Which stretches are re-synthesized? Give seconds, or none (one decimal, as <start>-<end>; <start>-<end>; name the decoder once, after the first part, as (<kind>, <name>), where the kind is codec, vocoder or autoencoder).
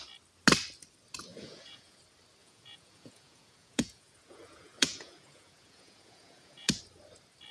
1.3-2.0 (vocoder, Vocos); 2.4-6.8